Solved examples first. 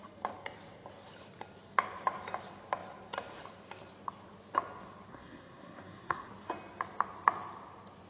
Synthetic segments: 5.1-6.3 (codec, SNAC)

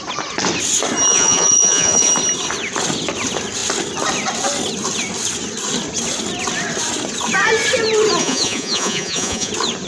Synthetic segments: 1.1-2.1 (vocoder, Vocos); 8.2-9.5